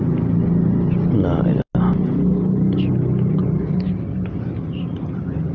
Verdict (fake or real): real